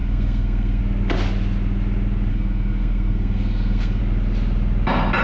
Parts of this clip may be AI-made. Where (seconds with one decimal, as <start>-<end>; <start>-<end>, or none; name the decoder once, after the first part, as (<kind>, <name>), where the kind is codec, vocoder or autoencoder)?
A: 0.0-0.8 (codec, SNAC); 2.3-4.0